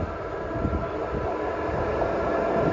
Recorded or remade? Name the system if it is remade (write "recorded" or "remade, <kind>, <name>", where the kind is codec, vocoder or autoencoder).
recorded